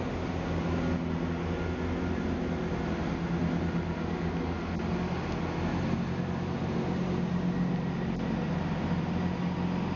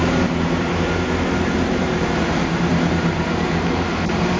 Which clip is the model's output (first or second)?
second